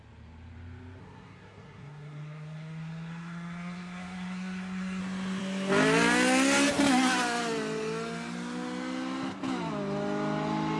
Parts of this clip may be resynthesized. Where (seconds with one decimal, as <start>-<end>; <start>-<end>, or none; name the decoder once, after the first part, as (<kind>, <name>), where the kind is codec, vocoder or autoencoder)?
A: 1.0-5.0 (codec, SNAC)

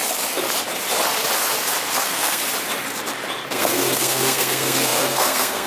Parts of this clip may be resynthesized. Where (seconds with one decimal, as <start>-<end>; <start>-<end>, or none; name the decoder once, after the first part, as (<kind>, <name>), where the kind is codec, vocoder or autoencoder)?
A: 1.9-2.4 (codec, SNAC); 3.5-5.7

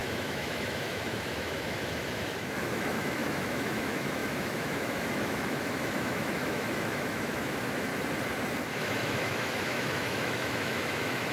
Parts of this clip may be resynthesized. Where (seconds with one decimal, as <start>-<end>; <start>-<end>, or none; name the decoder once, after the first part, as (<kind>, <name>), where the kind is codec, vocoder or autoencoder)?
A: 0.0-7.9 (autoencoder, DAC-VAE); 8.7-11.3

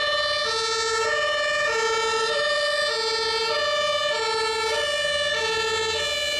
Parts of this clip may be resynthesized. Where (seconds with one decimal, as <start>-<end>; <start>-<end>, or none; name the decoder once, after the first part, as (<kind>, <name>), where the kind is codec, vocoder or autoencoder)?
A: 2.1-2.8 (vocoder, BigVGAN v2)